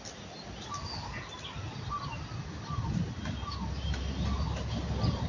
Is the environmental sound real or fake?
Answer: real